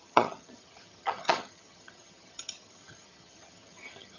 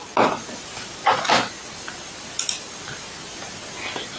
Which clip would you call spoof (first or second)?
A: first